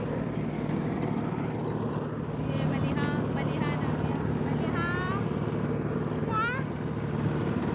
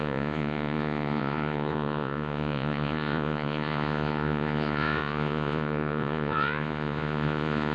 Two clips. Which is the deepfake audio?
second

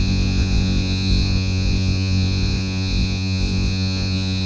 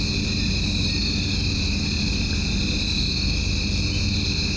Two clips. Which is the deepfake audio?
first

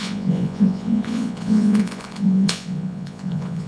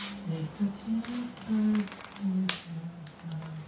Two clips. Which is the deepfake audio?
first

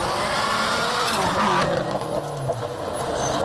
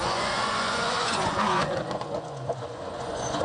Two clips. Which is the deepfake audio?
second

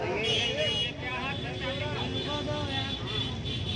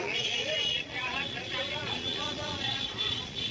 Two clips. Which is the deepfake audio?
second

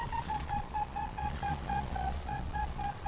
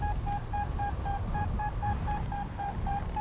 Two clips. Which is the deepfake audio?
first